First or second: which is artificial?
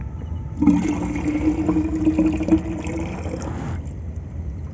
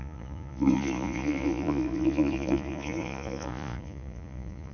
second